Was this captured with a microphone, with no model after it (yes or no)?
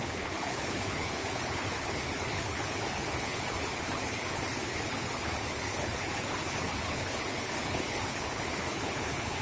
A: no